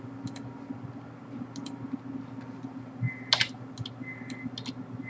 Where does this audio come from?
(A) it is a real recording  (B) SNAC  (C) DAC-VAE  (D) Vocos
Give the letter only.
A